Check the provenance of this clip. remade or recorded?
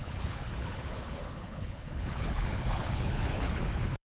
remade